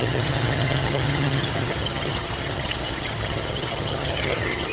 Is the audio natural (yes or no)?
no